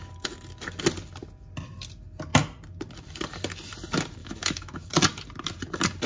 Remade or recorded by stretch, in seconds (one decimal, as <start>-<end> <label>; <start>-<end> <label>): 0.0-4.2 recorded; 4.2-4.9 remade; 4.9-6.1 recorded

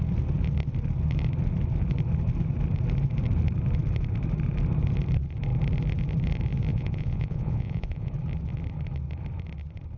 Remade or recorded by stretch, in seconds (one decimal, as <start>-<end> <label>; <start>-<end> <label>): 0.0-6.7 recorded; 6.7-8.1 remade; 8.1-10.0 recorded

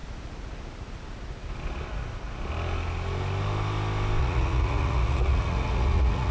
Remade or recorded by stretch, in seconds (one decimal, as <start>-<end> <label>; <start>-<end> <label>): 0.0-4.2 recorded; 4.2-6.3 remade